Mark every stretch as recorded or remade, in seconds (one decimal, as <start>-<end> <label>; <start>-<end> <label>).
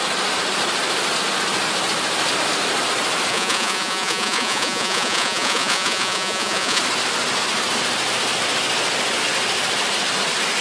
0.0-3.3 recorded; 3.3-6.8 remade; 6.8-10.6 recorded